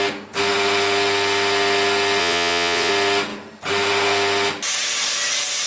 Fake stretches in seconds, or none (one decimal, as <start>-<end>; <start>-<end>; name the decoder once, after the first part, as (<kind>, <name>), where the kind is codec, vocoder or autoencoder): 2.2-2.9 (vocoder, WaveNeXt)